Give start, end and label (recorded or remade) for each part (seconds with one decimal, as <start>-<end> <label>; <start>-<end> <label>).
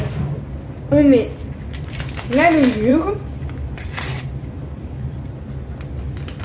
0.0-1.4 recorded; 1.4-2.0 remade; 2.0-2.9 recorded; 2.9-5.2 remade; 5.2-6.4 recorded